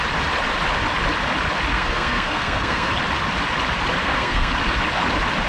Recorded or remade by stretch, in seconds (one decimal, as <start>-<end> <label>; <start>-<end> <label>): 0.0-1.7 recorded; 1.7-2.9 remade; 2.9-4.0 recorded; 4.0-4.5 remade; 4.5-5.5 recorded